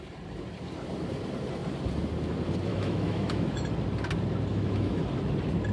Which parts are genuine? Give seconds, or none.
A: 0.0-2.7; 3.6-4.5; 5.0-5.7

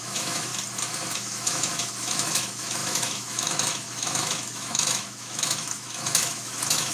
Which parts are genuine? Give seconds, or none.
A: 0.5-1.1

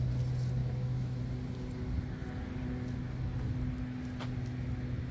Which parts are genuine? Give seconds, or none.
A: 0.0-0.6; 1.2-5.1

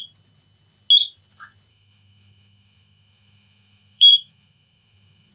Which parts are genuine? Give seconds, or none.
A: 0.0-1.7